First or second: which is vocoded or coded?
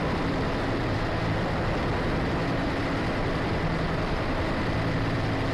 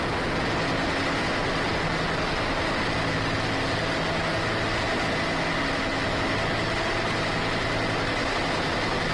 first